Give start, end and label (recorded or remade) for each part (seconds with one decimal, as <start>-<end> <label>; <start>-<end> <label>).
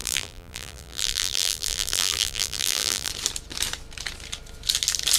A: 0.0-3.1 remade; 3.1-5.2 recorded